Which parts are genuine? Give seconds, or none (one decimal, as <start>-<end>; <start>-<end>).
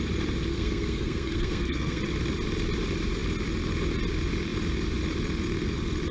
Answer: 0.0-0.5; 2.0-6.1